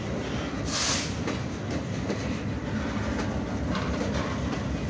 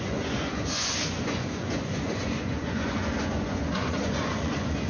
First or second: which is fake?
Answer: second